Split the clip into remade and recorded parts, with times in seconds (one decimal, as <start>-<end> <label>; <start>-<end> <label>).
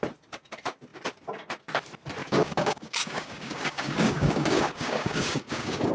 0.0-2.2 recorded; 2.2-5.9 remade